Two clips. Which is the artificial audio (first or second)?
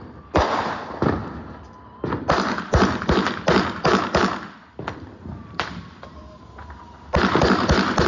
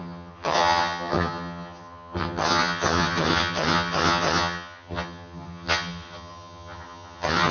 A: second